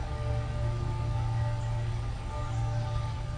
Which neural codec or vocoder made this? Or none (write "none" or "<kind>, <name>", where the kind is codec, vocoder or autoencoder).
codec, DAC